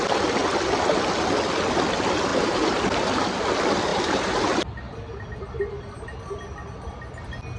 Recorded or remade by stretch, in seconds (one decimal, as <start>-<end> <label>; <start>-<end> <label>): 0.0-2.3 recorded; 2.3-2.8 remade; 2.8-3.9 recorded; 3.9-4.5 remade; 4.5-7.6 recorded